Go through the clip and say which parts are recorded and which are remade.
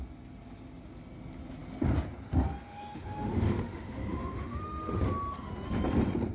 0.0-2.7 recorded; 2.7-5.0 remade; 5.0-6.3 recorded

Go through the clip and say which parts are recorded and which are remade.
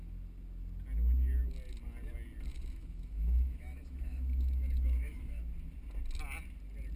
0.0-2.5 recorded; 2.5-5.4 remade; 5.4-7.0 recorded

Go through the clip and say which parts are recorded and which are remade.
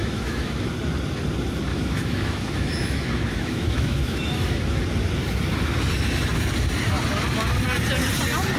0.0-0.7 remade; 0.7-1.7 recorded; 1.7-4.8 remade; 4.8-8.6 recorded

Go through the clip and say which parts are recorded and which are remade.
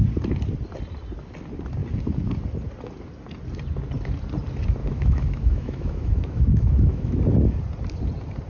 0.0-4.8 recorded; 4.8-7.2 remade; 7.2-8.5 recorded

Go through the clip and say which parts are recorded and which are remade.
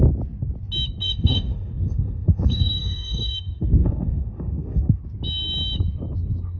0.0-1.0 recorded; 1.0-5.0 remade; 5.0-6.6 recorded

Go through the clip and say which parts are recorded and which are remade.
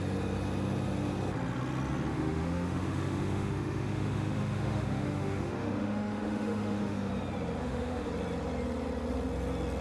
0.0-2.1 recorded; 2.1-7.1 remade; 7.1-7.6 recorded; 7.6-8.1 remade; 8.1-9.8 recorded